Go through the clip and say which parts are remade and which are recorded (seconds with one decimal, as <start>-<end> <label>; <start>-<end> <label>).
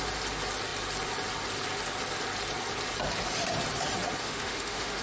0.0-4.2 recorded; 4.2-5.0 remade